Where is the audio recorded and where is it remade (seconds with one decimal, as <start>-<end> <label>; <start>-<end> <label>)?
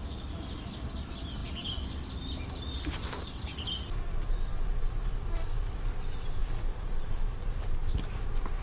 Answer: 0.0-8.6 recorded